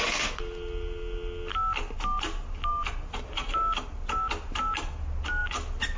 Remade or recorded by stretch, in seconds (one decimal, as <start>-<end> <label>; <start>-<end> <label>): 0.0-6.0 recorded